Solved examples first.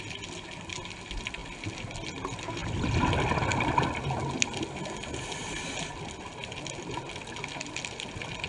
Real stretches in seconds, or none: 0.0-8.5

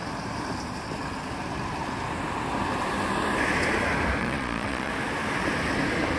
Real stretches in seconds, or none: 0.0-4.2; 4.9-6.2

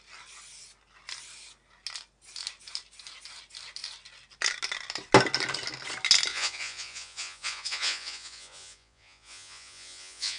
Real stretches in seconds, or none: 0.0-6.3